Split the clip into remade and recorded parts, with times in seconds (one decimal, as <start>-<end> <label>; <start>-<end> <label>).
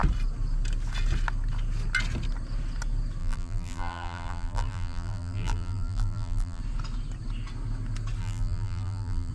0.0-3.2 recorded; 3.2-6.6 remade; 6.6-8.2 recorded; 8.2-9.3 remade